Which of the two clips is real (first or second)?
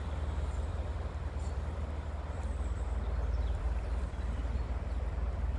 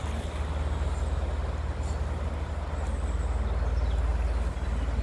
second